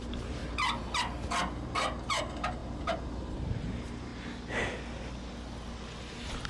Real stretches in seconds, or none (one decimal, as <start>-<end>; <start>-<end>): 0.4-2.2; 4.1-5.9